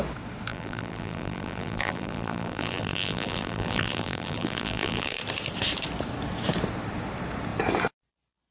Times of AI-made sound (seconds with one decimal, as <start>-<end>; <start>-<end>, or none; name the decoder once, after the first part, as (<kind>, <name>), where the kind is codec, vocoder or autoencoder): 0.5-5.2 (vocoder, BigVGAN v2)